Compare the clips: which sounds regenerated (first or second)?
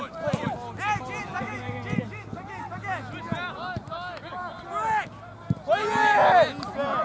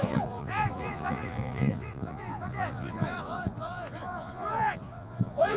second